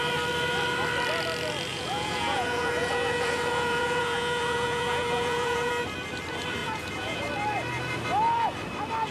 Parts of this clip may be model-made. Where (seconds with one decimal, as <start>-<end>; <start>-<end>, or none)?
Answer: 1.7-5.7; 6.6-7.2